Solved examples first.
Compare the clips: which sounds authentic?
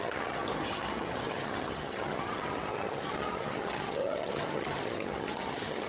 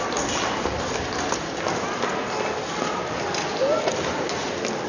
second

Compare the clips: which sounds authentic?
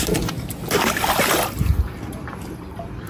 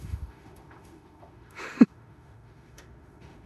first